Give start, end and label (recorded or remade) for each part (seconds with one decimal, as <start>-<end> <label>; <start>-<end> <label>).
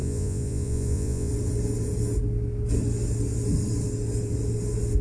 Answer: 0.0-1.3 remade; 1.3-5.0 recorded